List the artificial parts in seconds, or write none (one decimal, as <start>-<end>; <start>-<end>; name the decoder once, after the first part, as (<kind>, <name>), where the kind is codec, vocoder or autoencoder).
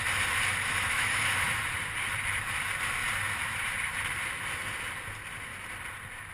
0.6-1.6 (autoencoder, DAC-VAE)